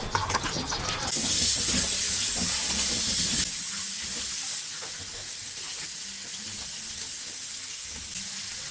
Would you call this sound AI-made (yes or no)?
no